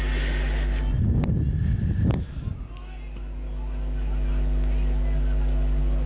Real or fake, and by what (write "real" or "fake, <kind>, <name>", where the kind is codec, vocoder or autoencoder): real